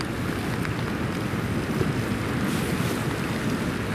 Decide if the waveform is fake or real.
real